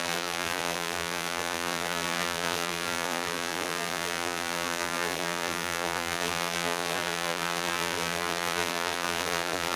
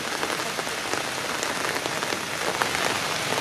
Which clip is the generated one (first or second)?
first